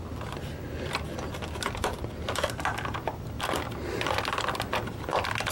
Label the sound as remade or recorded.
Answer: recorded